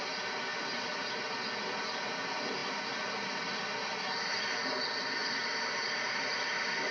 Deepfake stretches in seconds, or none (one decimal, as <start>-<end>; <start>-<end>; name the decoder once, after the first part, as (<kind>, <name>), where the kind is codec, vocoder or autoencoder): 5.2-6.5 (vocoder, BigVGAN v2)

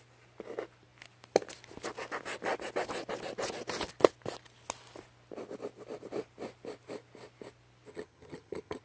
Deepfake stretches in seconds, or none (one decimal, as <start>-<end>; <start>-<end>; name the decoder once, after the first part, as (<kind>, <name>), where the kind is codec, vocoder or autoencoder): 7.9-8.8 (vocoder, HiFi-GAN)